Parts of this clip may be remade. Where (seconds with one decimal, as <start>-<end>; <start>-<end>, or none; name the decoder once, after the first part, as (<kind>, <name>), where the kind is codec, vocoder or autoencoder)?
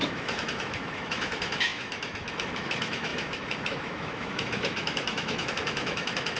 0.0-6.4 (autoencoder, DAC-VAE)